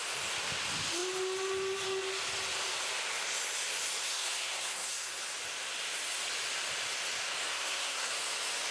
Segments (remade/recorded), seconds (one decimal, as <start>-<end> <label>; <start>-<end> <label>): 0.0-4.0 recorded; 4.0-5.2 remade; 5.2-7.5 recorded; 7.5-8.1 remade; 8.1-8.7 recorded